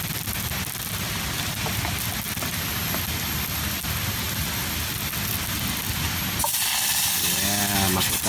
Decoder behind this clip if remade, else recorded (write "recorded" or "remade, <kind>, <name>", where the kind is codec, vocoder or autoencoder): recorded